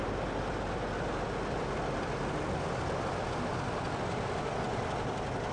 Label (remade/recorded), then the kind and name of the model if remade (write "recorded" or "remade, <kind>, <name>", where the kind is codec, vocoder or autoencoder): recorded